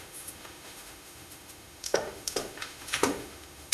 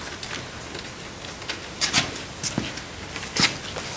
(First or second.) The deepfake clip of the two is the first